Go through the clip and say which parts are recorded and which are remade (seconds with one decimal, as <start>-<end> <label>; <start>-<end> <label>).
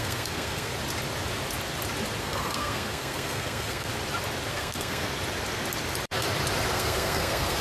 0.0-0.7 remade; 0.7-2.2 recorded; 2.2-3.9 remade; 3.9-4.5 recorded; 4.5-5.1 remade; 5.1-6.7 recorded; 6.7-7.6 remade